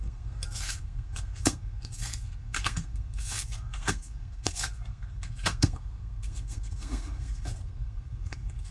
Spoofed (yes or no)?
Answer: yes